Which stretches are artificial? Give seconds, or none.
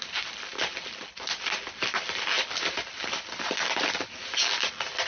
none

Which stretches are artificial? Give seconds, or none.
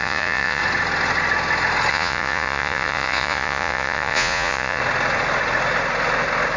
0.0-0.6 (vocoder, Vocos); 1.9-4.8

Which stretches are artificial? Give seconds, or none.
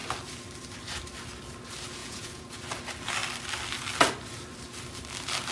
2.0-2.5 (vocoder, Vocos)